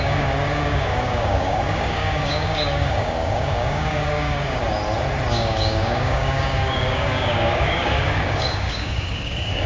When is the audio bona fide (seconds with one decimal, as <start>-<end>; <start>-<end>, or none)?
4.6-5.3